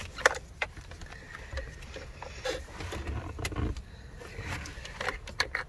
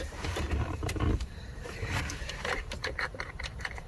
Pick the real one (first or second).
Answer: first